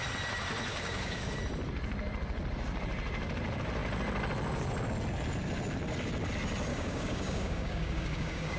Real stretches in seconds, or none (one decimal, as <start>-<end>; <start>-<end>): 0.0-0.7; 1.3-6.7